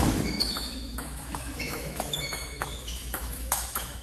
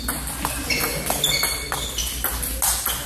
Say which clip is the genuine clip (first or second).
second